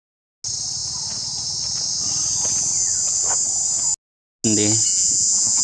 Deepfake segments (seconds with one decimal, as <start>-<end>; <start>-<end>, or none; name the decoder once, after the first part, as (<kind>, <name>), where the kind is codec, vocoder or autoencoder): 4.9-5.6 (vocoder, Vocos)